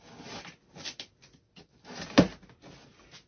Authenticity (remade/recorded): recorded